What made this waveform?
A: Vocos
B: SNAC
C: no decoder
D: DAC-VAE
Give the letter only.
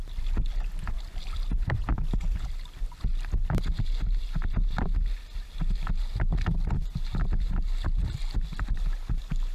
C